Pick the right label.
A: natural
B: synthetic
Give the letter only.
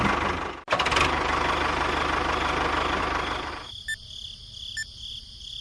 A